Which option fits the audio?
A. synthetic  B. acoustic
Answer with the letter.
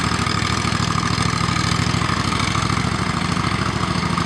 B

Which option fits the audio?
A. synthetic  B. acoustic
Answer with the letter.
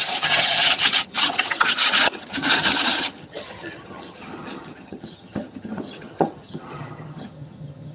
A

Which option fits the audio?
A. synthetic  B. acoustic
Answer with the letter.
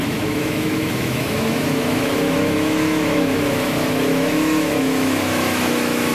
A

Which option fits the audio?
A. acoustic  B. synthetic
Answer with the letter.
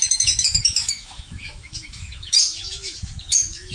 B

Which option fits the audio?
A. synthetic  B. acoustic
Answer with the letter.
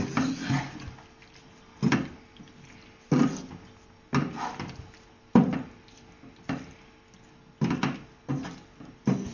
B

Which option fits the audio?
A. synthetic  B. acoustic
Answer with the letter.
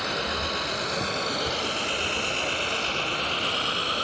B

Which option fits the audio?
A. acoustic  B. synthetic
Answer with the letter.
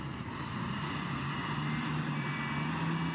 A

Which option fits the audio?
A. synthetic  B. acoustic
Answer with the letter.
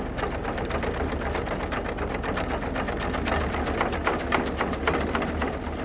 B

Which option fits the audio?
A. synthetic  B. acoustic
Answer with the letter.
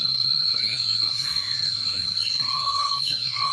A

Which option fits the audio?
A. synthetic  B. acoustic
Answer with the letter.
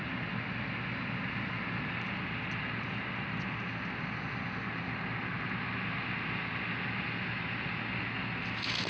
B